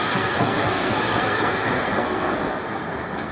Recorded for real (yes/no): no